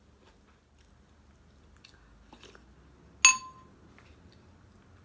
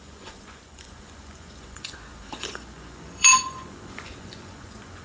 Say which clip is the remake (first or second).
second